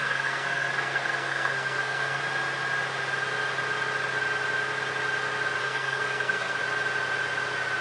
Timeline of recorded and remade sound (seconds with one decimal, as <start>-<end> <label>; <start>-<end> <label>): 0.0-2.2 remade; 2.2-5.6 recorded; 5.6-6.6 remade; 6.6-7.8 recorded